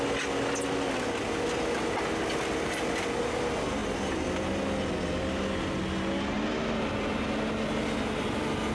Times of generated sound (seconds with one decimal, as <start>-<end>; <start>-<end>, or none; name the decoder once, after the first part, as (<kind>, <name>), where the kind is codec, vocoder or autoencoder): none